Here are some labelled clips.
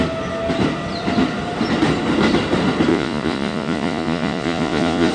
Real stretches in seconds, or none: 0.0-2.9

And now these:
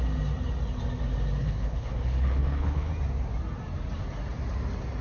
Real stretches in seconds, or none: 0.0-1.4; 2.9-5.0

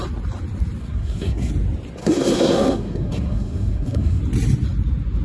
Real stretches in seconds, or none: 0.0-0.8; 1.5-2.0; 4.2-5.2